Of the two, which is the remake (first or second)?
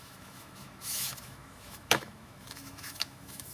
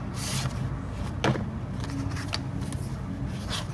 first